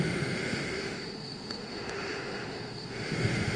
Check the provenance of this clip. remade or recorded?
remade